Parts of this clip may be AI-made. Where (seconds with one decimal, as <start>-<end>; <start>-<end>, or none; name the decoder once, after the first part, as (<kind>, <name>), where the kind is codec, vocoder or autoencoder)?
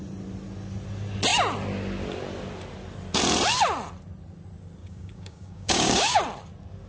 4.8-6.2 (codec, DAC)